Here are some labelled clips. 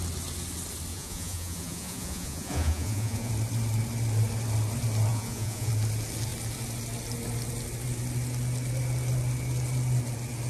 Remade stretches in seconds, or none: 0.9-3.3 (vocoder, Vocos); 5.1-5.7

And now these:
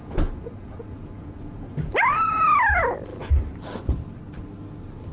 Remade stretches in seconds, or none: 0.0-1.9 (vocoder, Vocos)

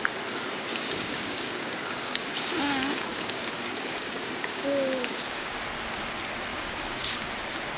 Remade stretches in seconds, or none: 0.7-2.5 (codec, DAC); 3.1-5.6; 6.5-7.3

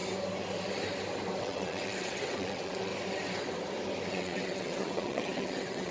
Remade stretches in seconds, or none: 1.4-2.9 (vocoder, WaveNeXt); 4.1-5.9

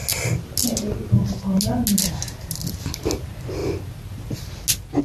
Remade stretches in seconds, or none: none

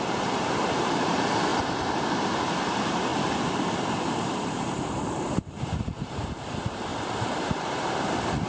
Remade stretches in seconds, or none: 0.0-3.1 (vocoder, BigVGAN v2); 3.7-6.9; 7.4-8.5

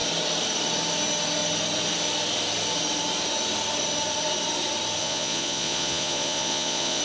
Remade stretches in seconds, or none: 5.0-7.0 (vocoder, Vocos)

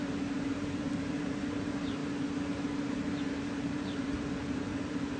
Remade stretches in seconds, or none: 0.0-2.0 (vocoder, BigVGAN v2); 3.2-5.2